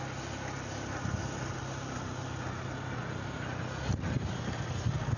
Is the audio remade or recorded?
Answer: recorded